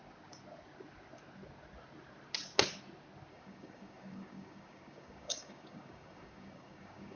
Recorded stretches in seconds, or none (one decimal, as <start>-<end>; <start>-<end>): 0.0-3.3